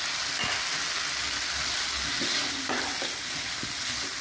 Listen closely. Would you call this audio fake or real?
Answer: real